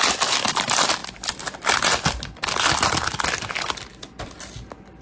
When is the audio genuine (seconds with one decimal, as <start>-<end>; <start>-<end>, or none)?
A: 0.0-5.0